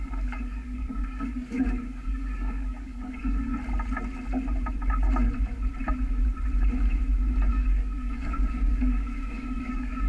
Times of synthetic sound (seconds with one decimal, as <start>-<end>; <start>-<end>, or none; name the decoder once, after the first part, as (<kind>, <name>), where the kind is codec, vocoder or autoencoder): 0.0-3.5 (codec, DAC); 7.5-10.1